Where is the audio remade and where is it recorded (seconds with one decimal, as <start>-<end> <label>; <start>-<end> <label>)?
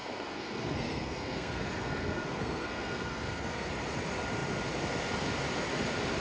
0.0-3.7 remade; 3.7-6.2 recorded